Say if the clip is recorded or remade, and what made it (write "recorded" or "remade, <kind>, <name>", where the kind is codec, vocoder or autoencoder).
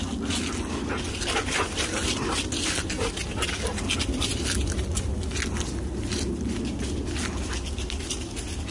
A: recorded